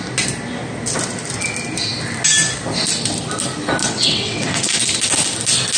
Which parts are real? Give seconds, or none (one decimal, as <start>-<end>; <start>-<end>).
0.0-3.8; 4.7-5.8